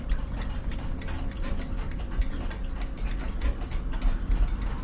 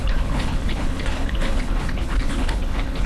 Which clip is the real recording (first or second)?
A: first